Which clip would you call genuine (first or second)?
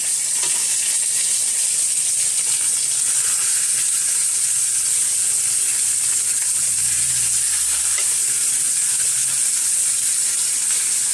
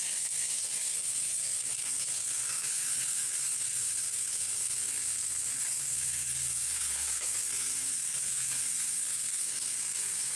first